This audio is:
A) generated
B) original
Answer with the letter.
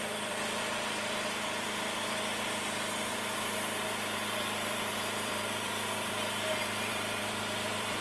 A